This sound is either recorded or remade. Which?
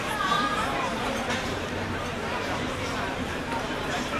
remade